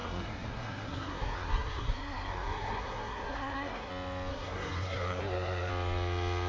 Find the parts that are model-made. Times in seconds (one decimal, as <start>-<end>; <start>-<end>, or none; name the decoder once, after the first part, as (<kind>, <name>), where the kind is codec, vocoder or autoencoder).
0.0-3.9 (codec, SNAC); 4.3-5.7